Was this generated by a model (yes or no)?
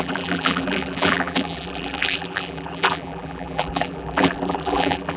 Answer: yes